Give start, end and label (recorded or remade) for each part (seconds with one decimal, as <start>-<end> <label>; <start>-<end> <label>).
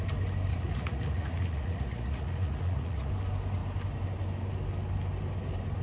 0.0-0.5 recorded; 0.5-3.1 remade; 3.1-5.8 recorded